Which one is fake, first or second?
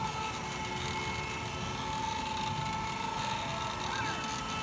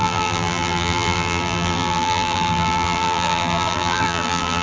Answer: second